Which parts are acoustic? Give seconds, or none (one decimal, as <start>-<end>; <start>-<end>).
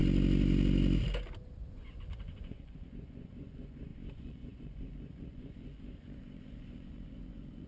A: 0.0-1.7